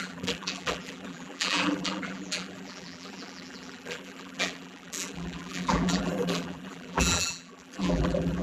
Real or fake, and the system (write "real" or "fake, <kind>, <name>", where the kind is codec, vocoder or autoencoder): fake, vocoder, BigVGAN v2